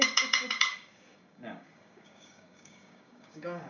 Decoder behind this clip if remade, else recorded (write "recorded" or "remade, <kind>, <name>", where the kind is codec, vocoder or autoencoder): remade, codec, DAC